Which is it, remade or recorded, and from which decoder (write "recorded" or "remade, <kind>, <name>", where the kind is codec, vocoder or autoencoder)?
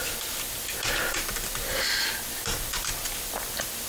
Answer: remade, vocoder, BigVGAN v2